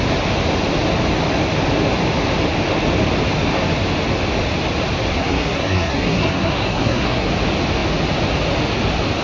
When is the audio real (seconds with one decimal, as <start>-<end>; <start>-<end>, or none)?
0.0-5.2; 7.3-9.2